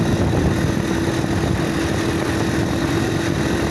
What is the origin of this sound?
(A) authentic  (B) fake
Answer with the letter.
A